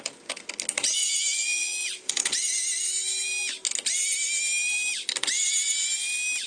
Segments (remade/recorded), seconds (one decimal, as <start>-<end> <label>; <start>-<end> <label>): 0.0-1.0 recorded; 1.0-2.5 remade; 2.5-6.5 recorded